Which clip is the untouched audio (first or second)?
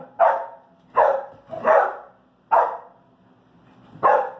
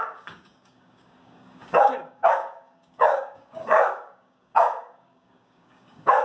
first